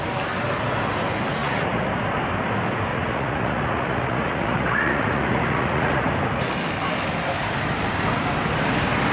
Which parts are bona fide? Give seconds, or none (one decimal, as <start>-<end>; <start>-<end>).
0.0-1.4; 1.9-2.9; 6.1-9.1